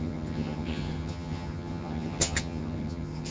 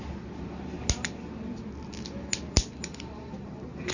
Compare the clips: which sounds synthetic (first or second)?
first